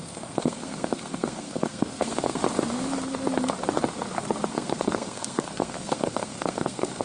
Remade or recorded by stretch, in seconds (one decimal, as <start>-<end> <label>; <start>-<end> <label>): 0.0-2.4 remade; 2.4-4.5 recorded; 4.5-7.0 remade